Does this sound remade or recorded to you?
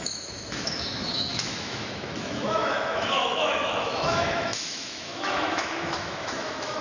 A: remade